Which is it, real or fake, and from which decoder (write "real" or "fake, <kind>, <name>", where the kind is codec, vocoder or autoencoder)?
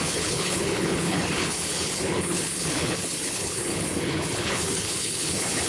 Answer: fake, codec, HILCodec